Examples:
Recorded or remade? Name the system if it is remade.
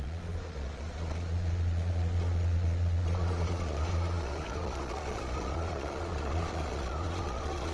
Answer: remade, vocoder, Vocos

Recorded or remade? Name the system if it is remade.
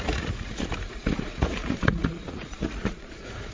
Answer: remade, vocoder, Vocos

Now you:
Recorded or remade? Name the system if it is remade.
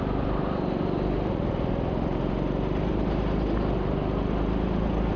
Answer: recorded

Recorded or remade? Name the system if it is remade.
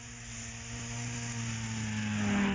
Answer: recorded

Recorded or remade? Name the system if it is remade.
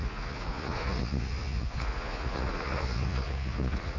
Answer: remade, vocoder, Vocos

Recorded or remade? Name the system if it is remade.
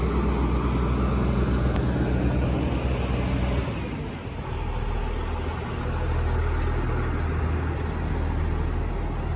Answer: recorded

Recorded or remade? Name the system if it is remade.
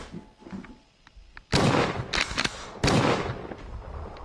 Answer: recorded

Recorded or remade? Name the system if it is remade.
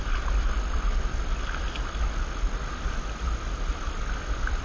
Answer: recorded